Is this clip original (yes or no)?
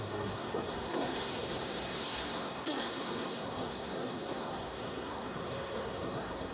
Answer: no